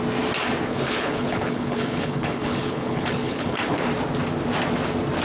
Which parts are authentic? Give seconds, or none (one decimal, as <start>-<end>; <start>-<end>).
0.0-0.7; 3.8-5.2